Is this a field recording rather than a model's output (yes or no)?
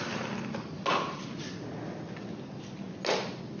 yes